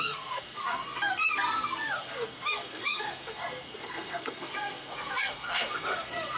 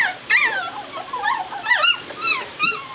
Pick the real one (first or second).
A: second